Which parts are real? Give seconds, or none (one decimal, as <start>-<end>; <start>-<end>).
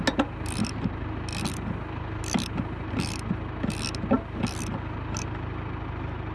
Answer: 0.0-6.3